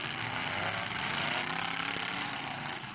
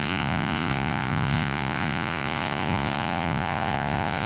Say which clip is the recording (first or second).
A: first